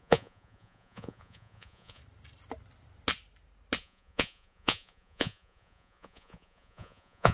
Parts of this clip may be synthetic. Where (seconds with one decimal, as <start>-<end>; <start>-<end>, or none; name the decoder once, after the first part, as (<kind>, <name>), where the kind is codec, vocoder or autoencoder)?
0.0-2.0 (vocoder, Vocos); 3.8-7.3

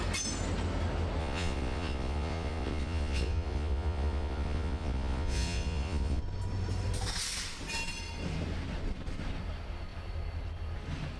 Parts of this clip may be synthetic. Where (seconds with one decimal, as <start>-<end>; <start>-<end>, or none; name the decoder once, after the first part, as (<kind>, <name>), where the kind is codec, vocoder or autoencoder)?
1.2-6.2 (vocoder, Vocos)

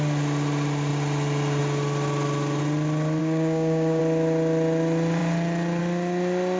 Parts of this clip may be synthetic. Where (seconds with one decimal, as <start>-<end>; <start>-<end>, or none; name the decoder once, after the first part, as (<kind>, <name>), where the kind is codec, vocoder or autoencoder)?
3.2-4.0 (codec, DAC)

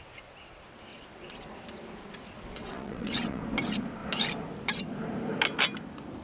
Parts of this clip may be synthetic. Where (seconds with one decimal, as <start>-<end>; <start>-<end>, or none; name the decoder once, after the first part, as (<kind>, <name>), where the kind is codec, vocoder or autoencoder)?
0.9-1.5 (vocoder, WaveNeXt); 2.6-3.4

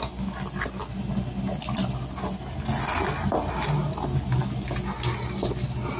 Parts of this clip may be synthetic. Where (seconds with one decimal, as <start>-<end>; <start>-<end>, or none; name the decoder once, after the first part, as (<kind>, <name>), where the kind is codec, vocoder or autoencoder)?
none